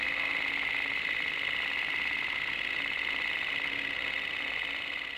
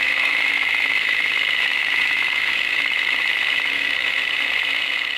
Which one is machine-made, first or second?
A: second